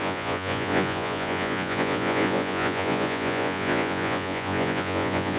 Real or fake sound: fake